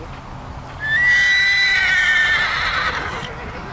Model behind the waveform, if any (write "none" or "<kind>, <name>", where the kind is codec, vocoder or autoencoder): none